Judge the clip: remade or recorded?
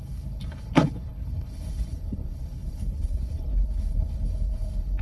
remade